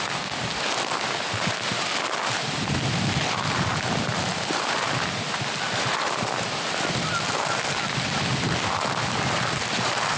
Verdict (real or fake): real